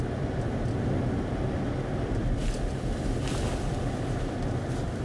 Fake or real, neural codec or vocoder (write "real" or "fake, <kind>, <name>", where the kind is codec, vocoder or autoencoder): real